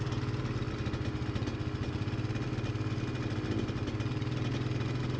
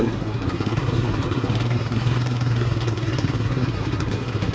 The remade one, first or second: second